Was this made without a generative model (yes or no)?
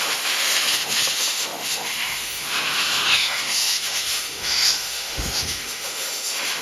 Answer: no